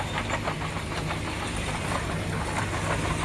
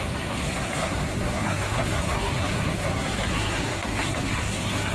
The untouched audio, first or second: first